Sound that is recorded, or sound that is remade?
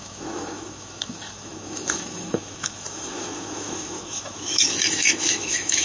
remade